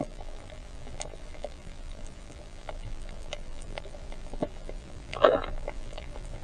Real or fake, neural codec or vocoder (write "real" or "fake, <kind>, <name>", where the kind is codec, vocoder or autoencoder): fake, vocoder, BigVGAN v2